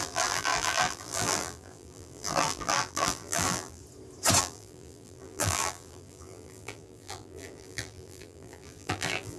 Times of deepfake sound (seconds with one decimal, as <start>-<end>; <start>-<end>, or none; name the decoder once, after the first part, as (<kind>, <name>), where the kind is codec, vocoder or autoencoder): 0.0-3.8 (vocoder, BigVGAN v2); 4.4-9.4